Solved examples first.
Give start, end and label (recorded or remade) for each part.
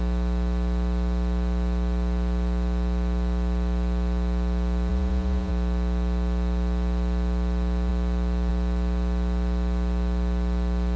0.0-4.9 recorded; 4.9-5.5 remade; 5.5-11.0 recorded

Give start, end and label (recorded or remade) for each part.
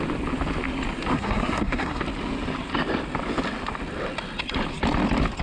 0.0-1.1 recorded; 1.1-2.0 remade; 2.0-5.4 recorded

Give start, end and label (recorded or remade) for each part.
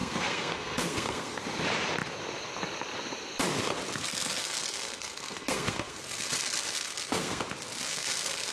0.0-1.4 remade; 1.4-4.0 recorded; 4.0-7.4 remade; 7.4-7.9 recorded; 7.9-8.5 remade